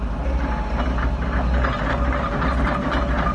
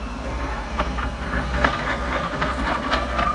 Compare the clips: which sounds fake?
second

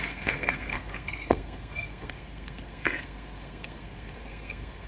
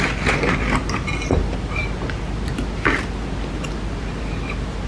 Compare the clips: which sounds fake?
first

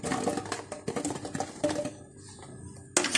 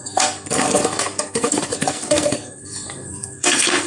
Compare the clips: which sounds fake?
second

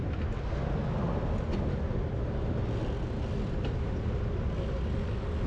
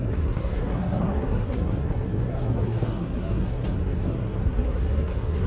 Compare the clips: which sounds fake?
second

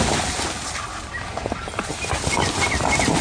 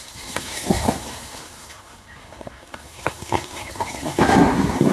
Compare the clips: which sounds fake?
second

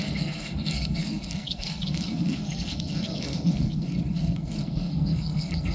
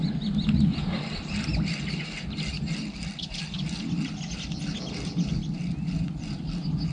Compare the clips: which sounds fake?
first